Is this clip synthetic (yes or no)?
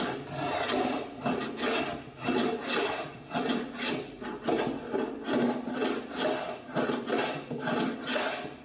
no